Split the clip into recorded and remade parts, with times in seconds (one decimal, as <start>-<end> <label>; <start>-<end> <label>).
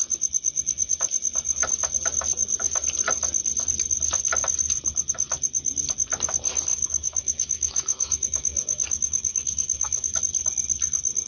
0.0-6.7 recorded; 6.7-10.2 remade; 10.2-11.3 recorded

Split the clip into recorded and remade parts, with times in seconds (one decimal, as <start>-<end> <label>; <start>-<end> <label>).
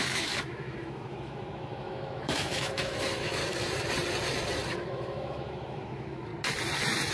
0.0-3.4 remade; 3.4-4.7 recorded; 4.7-6.3 remade; 6.3-7.1 recorded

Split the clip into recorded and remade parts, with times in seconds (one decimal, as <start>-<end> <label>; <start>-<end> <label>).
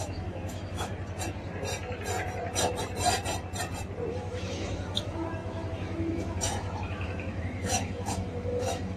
0.0-0.9 remade; 0.9-4.1 recorded; 4.1-9.0 remade